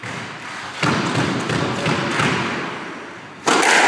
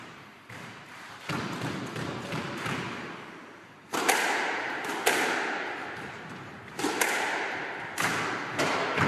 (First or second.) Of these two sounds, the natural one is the first